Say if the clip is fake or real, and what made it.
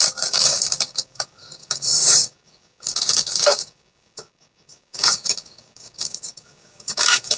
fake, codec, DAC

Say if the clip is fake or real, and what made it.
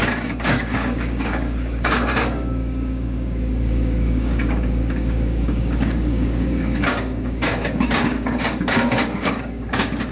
fake, codec, DAC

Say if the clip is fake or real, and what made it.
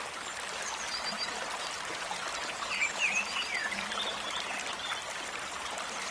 real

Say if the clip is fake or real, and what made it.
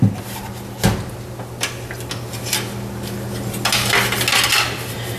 real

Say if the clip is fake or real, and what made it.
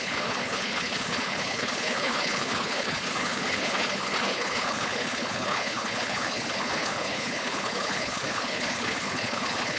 fake, codec, HILCodec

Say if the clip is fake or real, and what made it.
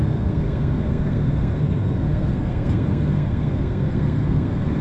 fake, codec, SNAC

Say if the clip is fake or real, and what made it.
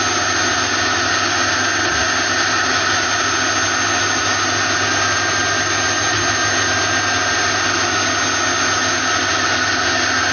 real